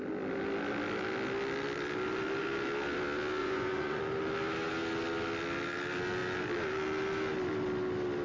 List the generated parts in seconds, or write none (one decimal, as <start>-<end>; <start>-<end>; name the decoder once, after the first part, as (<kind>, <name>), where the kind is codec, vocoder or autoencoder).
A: 3.4-4.0 (vocoder, Vocos)